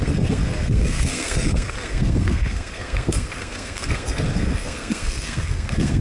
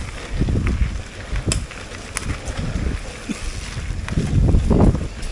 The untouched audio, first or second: second